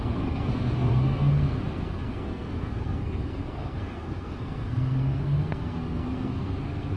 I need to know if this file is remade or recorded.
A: remade